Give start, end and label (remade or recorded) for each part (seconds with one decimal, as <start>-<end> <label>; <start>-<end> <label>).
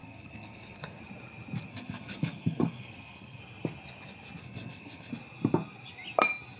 0.0-1.0 remade; 1.0-1.7 recorded; 1.7-3.4 remade; 3.4-4.4 recorded; 4.4-5.1 remade; 5.1-6.6 recorded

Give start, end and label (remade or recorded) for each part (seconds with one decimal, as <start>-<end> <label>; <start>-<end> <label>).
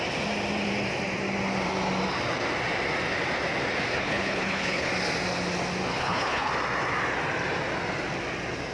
0.0-3.9 recorded; 3.9-4.9 remade; 4.9-5.9 recorded; 5.9-6.5 remade; 6.5-8.7 recorded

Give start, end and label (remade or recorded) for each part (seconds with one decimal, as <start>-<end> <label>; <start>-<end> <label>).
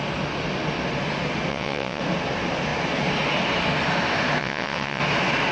0.0-1.5 recorded; 1.5-2.0 remade; 2.0-4.4 recorded; 4.4-5.0 remade; 5.0-5.5 recorded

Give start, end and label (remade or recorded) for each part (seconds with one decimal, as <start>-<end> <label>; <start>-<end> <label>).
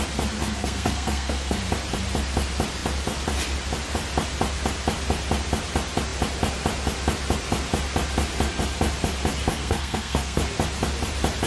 0.0-0.4 recorded; 0.4-1.6 remade; 1.6-9.5 recorded; 9.5-10.4 remade; 10.4-11.5 recorded